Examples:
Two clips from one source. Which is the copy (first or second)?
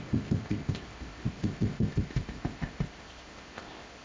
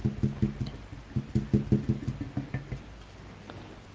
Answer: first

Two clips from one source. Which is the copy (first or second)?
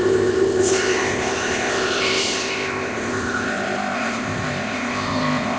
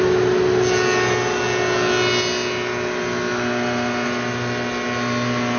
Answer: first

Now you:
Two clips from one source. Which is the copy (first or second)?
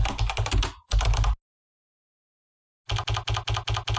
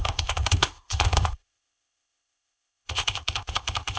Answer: second